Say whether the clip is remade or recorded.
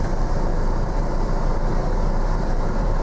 remade